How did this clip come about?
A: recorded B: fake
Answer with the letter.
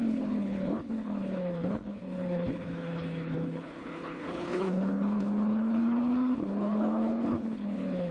B